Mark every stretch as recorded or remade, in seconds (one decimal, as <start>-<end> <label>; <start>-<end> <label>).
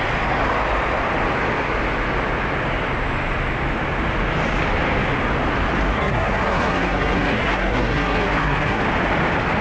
0.0-5.9 recorded; 5.9-8.8 remade; 8.8-9.6 recorded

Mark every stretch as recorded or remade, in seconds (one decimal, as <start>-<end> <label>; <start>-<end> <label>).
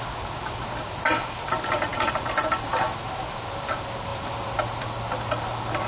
0.0-5.9 recorded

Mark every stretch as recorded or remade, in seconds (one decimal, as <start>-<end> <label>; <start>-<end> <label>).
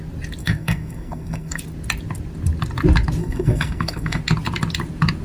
0.0-0.4 recorded; 0.4-1.6 remade; 1.6-3.2 recorded; 3.2-4.2 remade; 4.2-5.2 recorded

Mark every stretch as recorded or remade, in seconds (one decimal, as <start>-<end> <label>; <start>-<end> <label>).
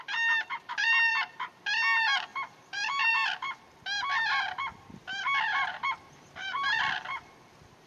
0.0-0.5 recorded; 0.5-1.5 remade; 1.5-2.3 recorded; 2.3-3.1 remade; 3.1-5.7 recorded; 5.7-6.8 remade; 6.8-7.9 recorded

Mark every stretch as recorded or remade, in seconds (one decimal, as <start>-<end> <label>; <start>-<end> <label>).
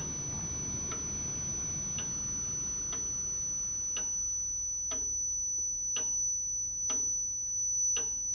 0.0-8.3 recorded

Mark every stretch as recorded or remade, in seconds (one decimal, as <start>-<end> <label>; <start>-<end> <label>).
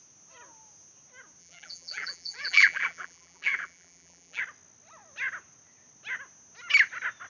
0.0-1.4 recorded; 1.4-4.4 remade; 4.4-7.3 recorded